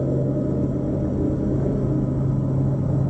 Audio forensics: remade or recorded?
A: recorded